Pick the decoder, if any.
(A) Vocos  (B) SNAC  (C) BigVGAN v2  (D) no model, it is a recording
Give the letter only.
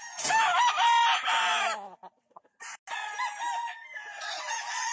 D